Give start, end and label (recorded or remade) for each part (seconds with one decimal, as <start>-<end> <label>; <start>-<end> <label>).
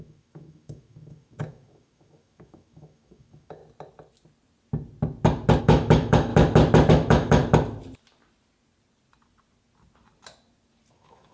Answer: 0.0-3.6 remade; 3.6-5.6 recorded; 5.6-6.3 remade; 6.3-6.9 recorded; 6.9-7.4 remade; 7.4-10.9 recorded; 10.9-11.3 remade